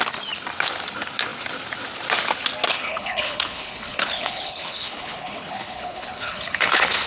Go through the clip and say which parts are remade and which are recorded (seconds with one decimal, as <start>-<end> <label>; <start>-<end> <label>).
0.0-2.7 recorded; 2.7-7.1 remade